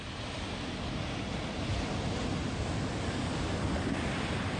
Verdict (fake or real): real